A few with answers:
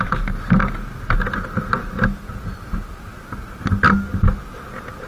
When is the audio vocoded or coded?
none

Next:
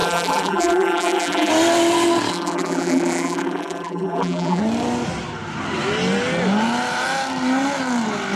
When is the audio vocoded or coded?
0.0-1.5; 2.3-4.6

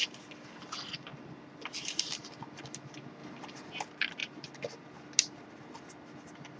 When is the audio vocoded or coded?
3.2-3.8

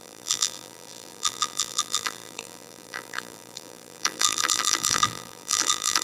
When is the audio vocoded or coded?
0.0-6.0

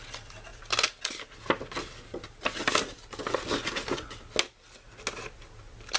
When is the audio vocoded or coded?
none

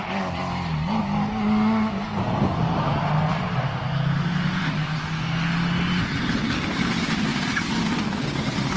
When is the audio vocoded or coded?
3.3-3.8; 7.3-8.0